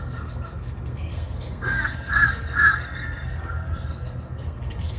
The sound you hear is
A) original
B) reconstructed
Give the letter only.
B